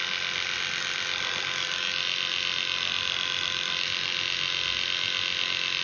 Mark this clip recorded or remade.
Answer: recorded